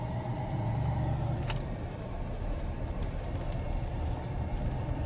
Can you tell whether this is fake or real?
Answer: real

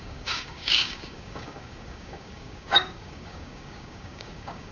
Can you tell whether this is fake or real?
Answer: fake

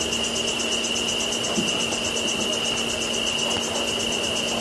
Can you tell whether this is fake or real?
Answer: real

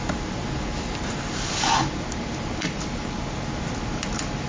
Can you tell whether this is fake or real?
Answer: real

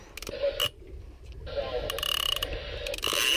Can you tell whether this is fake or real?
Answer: real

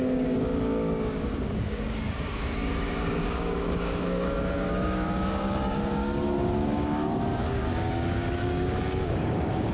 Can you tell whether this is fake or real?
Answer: fake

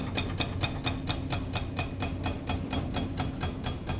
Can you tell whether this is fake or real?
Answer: real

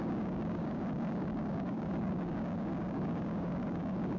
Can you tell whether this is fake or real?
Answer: fake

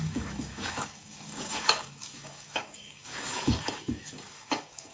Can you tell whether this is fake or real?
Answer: fake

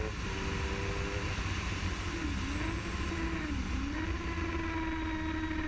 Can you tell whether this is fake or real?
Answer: real